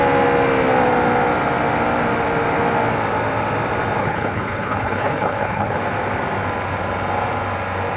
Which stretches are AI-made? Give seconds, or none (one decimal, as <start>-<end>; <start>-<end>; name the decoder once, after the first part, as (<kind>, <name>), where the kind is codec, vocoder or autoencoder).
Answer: 4.0-5.8 (codec, HILCodec)

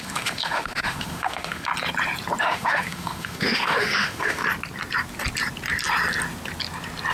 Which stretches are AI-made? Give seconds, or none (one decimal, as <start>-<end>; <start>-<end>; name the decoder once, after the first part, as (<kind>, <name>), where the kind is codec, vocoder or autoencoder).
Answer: 0.0-1.7 (autoencoder, DAC-VAE); 2.4-4.4

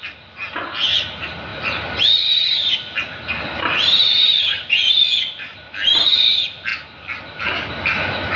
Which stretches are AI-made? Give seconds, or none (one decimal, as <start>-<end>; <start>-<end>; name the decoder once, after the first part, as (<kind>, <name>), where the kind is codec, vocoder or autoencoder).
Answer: none

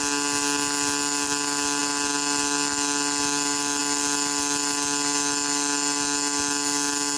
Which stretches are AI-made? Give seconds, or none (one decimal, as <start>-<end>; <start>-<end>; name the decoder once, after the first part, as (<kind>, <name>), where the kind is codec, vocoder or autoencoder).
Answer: none

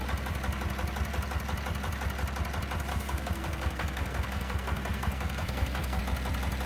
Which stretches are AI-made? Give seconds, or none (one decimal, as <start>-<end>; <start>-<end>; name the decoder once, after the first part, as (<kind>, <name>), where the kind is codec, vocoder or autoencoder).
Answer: 2.9-6.0 (codec, SNAC)